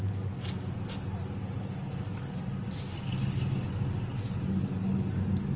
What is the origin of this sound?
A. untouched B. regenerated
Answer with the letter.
A